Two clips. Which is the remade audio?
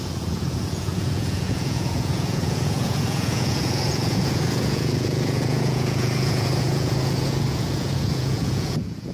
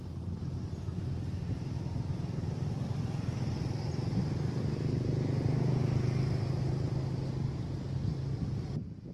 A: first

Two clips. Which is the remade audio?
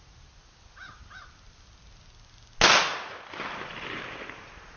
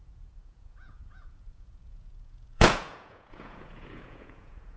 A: second